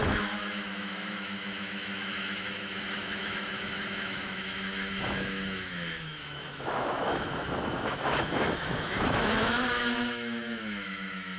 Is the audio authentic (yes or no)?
no